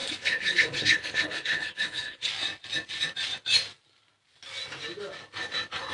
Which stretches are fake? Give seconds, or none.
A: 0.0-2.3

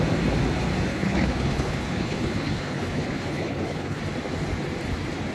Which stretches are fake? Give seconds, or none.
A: 0.9-4.0

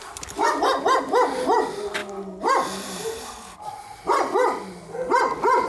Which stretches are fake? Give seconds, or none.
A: none

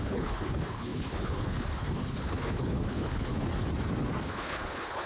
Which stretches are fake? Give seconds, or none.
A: 0.0-3.5; 4.2-5.1

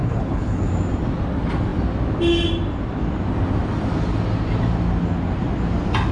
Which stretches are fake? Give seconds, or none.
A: 0.0-0.7

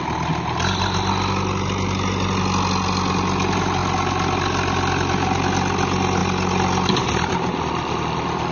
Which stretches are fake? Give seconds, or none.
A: none

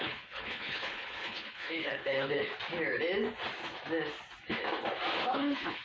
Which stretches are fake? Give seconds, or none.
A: 0.0-2.5; 5.3-5.8